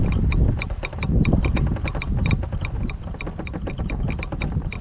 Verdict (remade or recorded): recorded